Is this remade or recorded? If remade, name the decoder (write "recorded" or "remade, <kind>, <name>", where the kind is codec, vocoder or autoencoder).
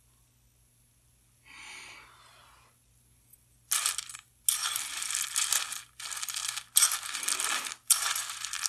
recorded